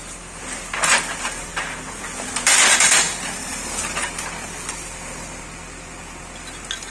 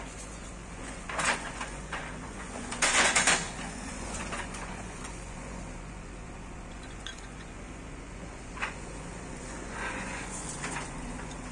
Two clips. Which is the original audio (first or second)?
first